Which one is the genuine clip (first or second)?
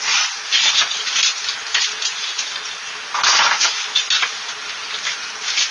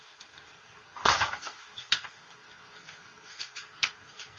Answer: first